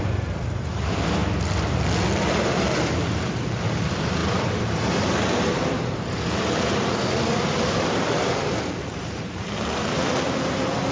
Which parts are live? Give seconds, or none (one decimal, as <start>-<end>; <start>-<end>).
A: 1.2-2.2